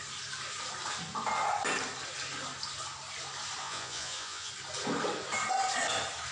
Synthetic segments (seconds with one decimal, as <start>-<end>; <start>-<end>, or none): 3.6-4.5